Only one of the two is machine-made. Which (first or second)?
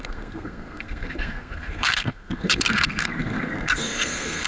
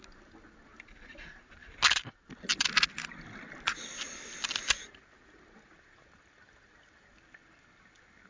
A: first